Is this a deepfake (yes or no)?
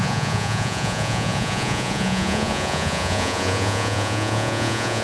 yes